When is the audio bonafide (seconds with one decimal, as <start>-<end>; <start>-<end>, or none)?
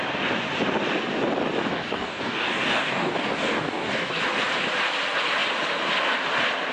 0.0-1.7; 4.2-6.7